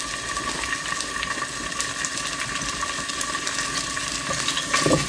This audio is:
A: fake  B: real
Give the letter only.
B